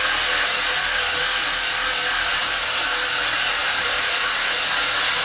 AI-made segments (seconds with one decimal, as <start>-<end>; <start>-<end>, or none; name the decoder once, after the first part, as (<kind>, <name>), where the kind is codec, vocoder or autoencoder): 2.3-2.8 (vocoder, BigVGAN v2); 3.6-4.6